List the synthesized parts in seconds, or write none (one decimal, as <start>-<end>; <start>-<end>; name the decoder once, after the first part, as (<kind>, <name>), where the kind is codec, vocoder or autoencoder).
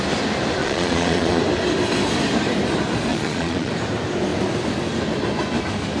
0.6-1.4 (vocoder, Vocos); 3.1-3.7